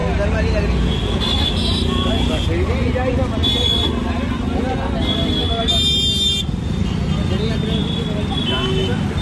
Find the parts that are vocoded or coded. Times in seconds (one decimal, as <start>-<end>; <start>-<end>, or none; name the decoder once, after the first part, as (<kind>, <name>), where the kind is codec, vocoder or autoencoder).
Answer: none